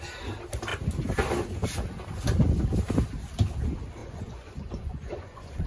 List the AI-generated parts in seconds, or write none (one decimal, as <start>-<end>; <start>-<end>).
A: 4.0-5.7